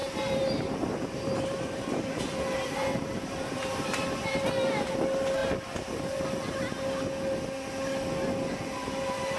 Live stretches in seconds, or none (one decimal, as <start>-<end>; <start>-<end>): 4.9-9.4